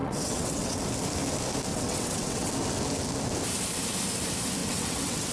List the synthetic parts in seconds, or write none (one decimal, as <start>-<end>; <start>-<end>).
0.0-0.8; 1.7-2.5; 4.6-5.3